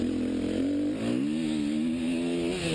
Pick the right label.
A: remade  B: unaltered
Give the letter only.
B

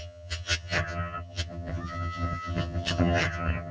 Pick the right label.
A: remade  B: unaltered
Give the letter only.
A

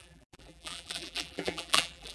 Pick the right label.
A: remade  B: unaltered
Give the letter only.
A